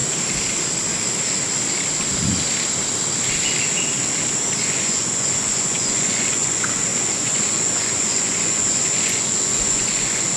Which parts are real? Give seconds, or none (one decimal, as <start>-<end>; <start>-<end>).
0.0-4.6